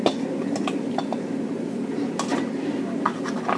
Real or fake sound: real